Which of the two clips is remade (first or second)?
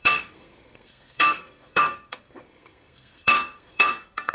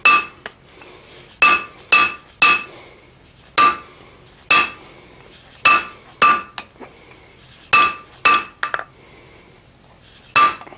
first